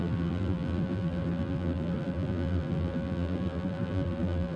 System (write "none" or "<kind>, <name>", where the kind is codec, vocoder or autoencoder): vocoder, BigVGAN v2